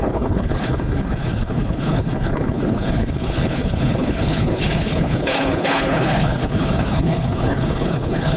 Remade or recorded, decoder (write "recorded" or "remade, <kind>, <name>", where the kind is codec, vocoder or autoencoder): remade, codec, HILCodec